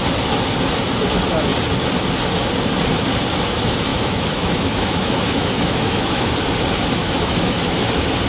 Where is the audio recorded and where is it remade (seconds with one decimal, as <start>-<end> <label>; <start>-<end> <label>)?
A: 0.0-3.9 recorded; 3.9-6.3 remade; 6.3-7.0 recorded; 7.0-7.6 remade; 7.6-8.3 recorded